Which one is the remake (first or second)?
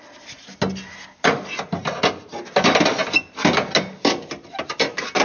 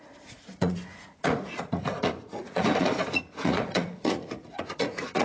second